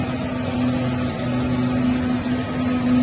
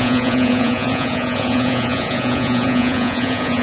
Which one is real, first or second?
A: first